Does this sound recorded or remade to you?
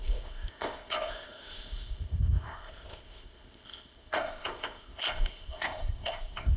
remade